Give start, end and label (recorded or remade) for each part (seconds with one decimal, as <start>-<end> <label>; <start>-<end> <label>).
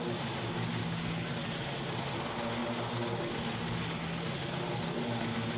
0.0-0.8 recorded; 0.8-1.4 remade; 1.4-5.6 recorded